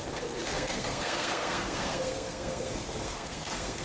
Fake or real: fake